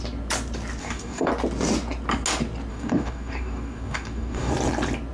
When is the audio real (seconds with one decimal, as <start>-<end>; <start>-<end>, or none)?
0.0-0.8; 1.3-2.7; 4.5-5.1